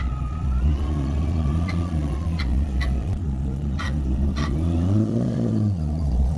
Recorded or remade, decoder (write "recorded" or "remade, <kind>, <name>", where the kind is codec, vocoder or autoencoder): remade, vocoder, Vocos